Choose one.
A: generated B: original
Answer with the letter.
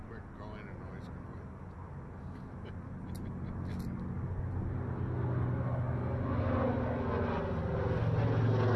B